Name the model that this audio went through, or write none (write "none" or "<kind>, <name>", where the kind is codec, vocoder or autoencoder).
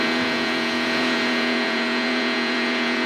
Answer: vocoder, Vocos